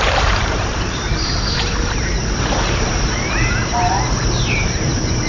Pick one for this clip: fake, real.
fake